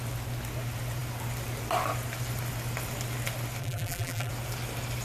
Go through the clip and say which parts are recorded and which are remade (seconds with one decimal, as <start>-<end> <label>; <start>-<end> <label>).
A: 0.0-3.6 recorded; 3.6-4.3 remade; 4.3-5.0 recorded